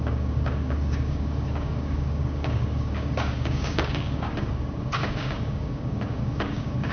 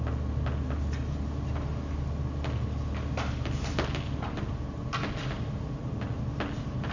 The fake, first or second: first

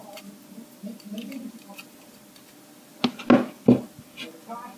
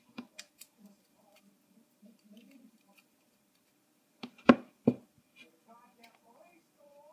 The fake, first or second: second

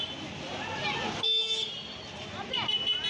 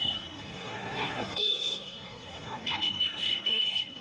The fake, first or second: second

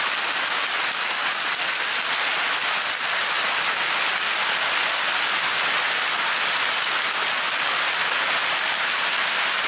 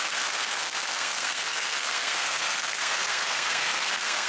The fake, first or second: second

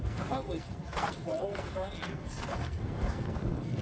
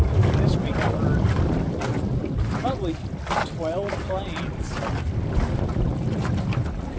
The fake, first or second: first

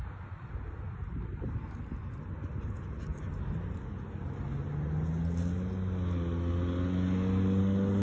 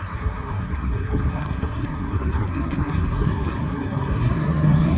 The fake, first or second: second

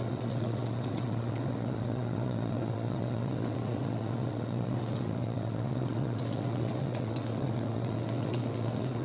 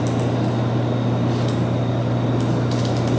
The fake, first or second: first